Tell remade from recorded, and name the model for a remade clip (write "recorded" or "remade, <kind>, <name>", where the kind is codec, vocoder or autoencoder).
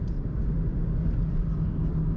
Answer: remade, vocoder, BigVGAN v2